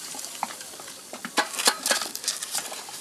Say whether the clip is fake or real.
real